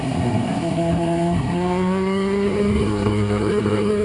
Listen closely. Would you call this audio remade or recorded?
remade